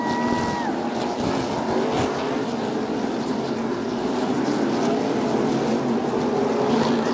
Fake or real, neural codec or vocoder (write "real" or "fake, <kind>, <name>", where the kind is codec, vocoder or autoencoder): real